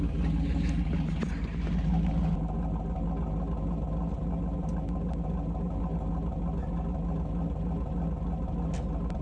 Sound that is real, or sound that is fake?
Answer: real